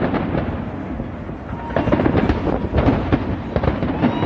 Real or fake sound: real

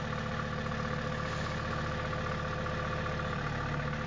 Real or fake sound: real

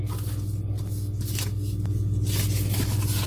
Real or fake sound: real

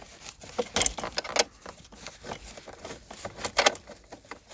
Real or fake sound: real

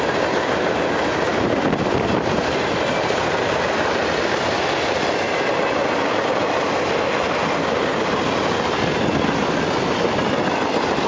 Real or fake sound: real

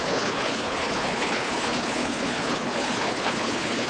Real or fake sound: fake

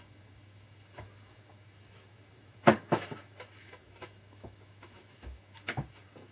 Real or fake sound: fake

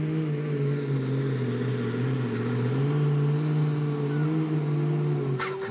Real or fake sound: real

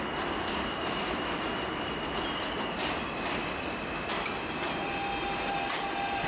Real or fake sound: real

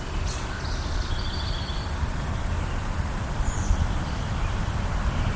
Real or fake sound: real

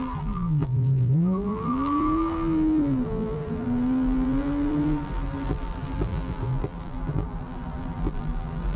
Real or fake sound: fake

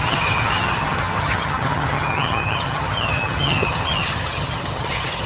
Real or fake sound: fake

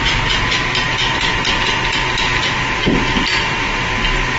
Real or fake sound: real